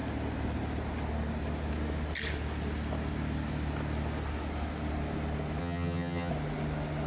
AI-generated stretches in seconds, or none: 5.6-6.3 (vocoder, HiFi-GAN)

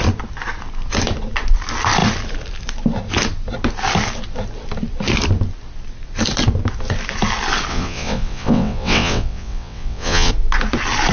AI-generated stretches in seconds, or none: 7.7-10.3 (vocoder, WaveNeXt)

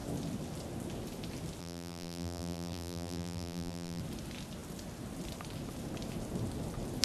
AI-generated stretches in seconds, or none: 1.6-4.0 (vocoder, BigVGAN v2)

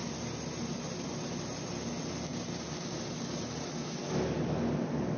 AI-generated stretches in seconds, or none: none

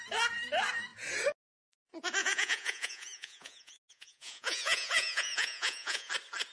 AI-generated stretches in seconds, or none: 2.2-6.1 (vocoder, Vocos)

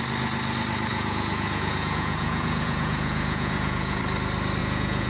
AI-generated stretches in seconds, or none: 0.9-4.0 (vocoder, Vocos); 4.6-5.1